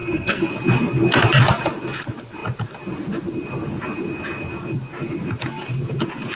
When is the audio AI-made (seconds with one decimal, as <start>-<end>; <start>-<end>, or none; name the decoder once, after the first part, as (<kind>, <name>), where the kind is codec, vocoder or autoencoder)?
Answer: 0.0-0.5 (codec, SNAC)